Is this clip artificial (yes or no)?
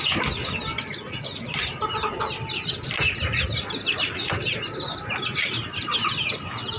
no